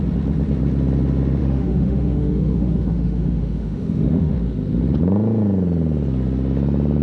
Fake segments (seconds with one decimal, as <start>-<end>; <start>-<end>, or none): 1.4-4.3